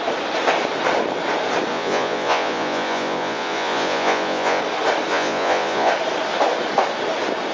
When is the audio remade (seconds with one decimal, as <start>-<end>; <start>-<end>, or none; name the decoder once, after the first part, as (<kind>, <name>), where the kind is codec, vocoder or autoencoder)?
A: 1.7-4.6 (vocoder, Vocos); 5.1-5.9